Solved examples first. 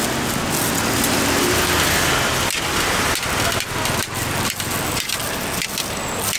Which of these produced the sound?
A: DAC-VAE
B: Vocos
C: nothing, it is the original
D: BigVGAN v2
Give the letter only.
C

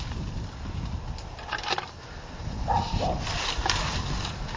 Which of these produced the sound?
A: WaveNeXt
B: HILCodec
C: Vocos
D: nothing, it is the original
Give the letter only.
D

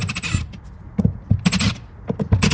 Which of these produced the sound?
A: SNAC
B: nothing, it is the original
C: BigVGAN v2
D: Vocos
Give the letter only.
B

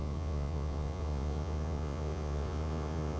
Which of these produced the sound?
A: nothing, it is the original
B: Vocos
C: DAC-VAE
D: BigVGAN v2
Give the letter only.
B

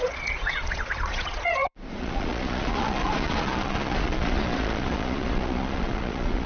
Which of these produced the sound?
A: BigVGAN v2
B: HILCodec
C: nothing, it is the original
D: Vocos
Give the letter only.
D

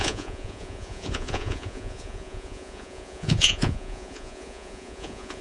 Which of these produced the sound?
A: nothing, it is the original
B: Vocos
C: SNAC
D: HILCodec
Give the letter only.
B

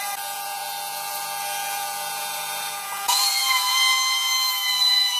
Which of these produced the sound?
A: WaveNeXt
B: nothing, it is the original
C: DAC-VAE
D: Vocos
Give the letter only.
D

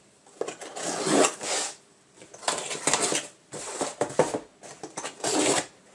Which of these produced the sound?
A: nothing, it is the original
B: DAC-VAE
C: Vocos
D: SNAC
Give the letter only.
A